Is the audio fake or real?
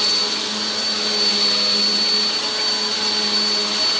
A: real